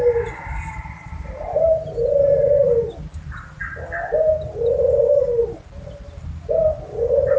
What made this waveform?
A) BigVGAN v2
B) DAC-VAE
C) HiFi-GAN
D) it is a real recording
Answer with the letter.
D